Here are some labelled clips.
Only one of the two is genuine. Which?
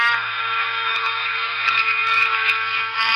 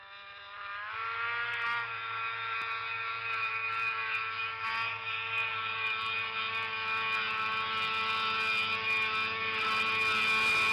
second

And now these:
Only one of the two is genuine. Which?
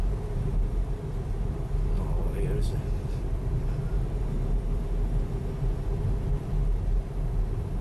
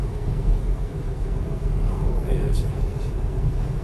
first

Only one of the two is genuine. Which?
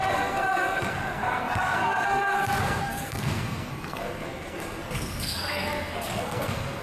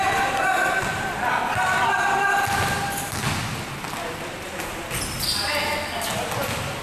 second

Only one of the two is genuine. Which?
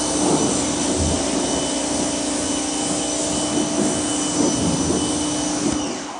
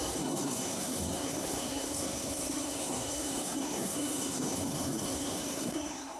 first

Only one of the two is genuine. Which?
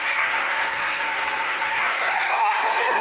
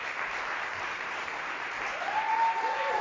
second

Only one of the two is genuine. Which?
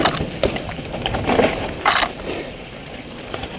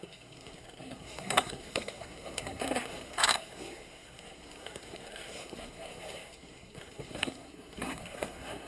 first